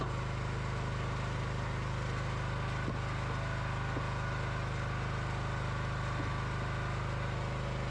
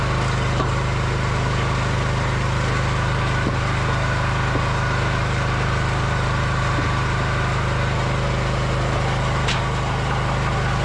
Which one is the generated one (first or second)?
second